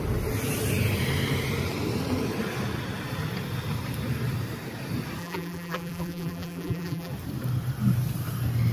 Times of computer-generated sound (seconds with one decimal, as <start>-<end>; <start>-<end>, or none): 5.2-7.1